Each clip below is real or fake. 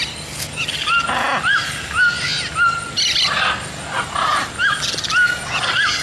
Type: real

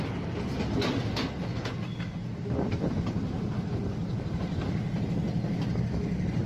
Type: real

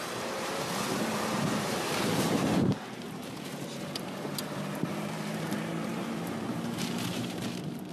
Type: fake